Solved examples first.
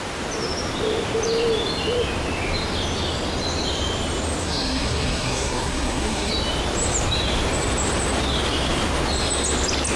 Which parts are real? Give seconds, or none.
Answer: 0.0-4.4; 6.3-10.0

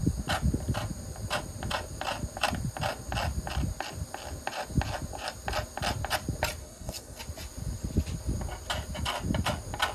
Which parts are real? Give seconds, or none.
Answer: 0.0-6.6; 7.2-9.9

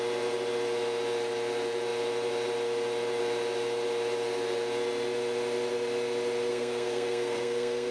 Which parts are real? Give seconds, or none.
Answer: 0.0-6.5